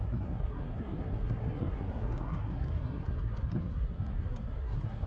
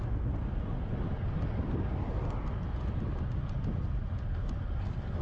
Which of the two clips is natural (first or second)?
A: second